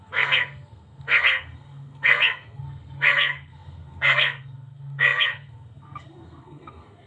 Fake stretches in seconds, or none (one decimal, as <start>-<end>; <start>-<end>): 0.0-7.1